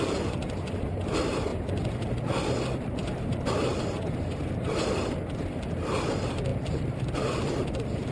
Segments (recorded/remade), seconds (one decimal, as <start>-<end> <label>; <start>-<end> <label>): 0.0-1.5 recorded; 1.5-2.5 remade; 2.5-6.5 recorded; 6.5-8.1 remade